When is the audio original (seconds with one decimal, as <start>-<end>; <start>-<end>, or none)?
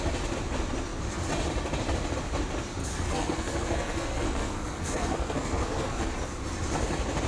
0.0-2.8; 6.1-7.3